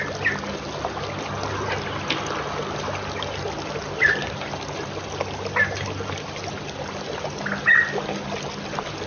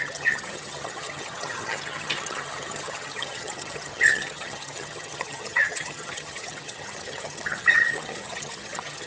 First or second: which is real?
first